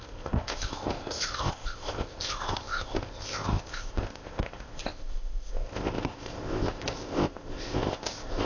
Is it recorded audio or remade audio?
remade